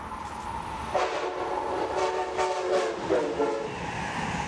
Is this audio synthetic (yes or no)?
no